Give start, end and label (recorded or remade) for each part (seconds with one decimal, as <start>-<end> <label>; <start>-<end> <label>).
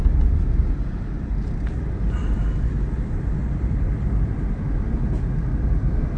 0.0-6.2 recorded